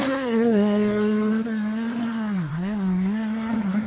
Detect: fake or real fake